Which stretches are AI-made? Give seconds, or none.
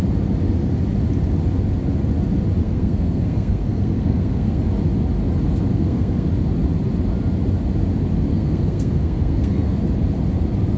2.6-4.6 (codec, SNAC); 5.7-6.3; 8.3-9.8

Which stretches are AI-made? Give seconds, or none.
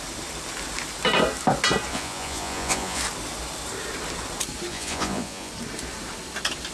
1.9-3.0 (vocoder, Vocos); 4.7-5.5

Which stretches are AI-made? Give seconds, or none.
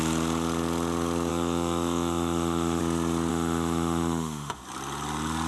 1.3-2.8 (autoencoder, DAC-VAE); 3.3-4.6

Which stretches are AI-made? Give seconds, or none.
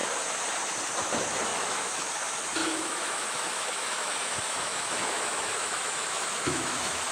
1.5-2.1 (autoencoder, DAC-VAE); 2.6-7.1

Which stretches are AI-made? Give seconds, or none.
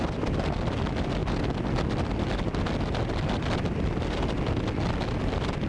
none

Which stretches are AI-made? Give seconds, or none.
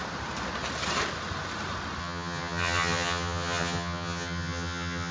2.0-5.1 (vocoder, HiFi-GAN)